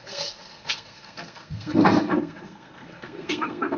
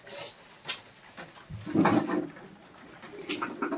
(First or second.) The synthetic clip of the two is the first